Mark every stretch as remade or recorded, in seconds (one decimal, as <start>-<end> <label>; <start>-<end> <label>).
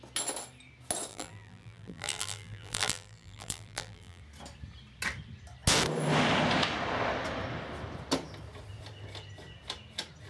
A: 0.0-1.1 recorded; 1.1-4.2 remade; 4.2-10.3 recorded